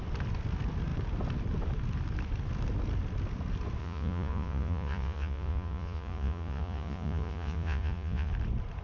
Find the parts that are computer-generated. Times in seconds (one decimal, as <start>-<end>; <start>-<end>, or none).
3.8-8.3